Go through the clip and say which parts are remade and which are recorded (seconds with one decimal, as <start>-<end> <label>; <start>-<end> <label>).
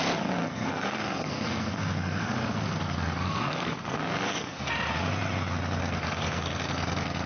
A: 0.0-0.4 recorded; 0.4-4.7 remade; 4.7-5.8 recorded; 5.8-7.3 remade